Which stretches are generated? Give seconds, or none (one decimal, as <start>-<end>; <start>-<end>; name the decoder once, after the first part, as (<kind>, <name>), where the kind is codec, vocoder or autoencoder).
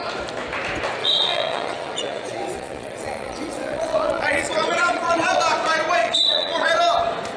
1.0-5.4 (vocoder, Vocos); 6.0-6.7